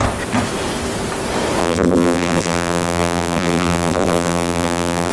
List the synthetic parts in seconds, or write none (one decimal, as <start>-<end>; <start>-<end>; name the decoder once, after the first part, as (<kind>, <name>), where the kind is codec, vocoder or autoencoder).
1.6-5.1 (vocoder, BigVGAN v2)